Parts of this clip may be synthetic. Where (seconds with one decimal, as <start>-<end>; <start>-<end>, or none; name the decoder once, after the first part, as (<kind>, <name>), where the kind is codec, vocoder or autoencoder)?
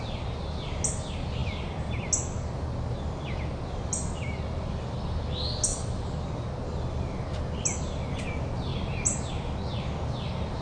none